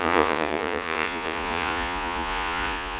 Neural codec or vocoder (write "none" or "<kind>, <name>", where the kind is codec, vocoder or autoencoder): vocoder, Vocos